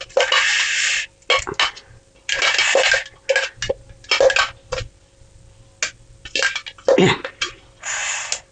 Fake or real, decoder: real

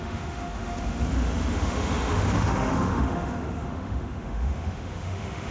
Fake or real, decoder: fake, autoencoder, DAC-VAE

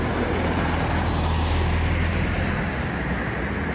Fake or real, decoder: real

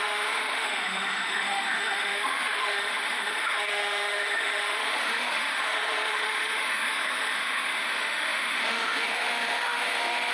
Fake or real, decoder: fake, autoencoder, DAC-VAE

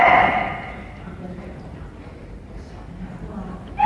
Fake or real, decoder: real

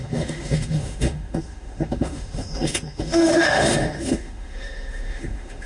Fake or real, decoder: fake, autoencoder, DAC-VAE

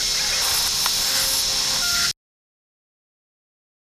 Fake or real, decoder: real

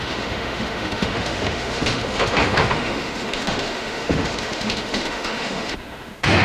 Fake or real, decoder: fake, autoencoder, DAC-VAE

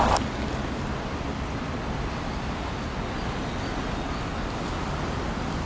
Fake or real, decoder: real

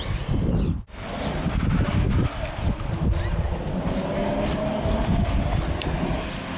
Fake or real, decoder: real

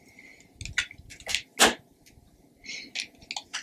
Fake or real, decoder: real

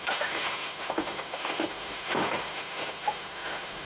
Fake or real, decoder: fake, autoencoder, DAC-VAE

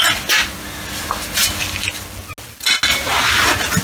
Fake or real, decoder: real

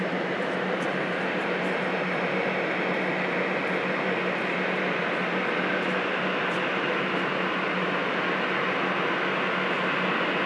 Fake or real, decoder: real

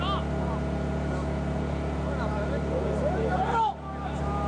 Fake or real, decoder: real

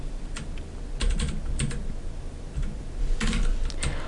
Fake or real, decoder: real